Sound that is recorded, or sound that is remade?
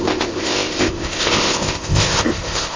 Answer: remade